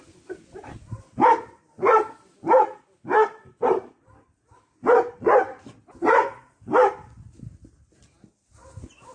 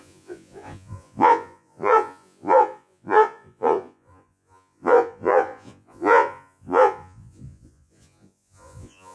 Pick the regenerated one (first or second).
second